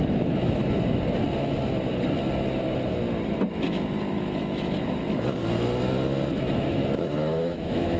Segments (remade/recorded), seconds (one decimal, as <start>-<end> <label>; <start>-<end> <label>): 0.0-0.6 remade; 0.6-4.1 recorded; 4.1-5.4 remade; 5.4-7.0 recorded; 7.0-8.0 remade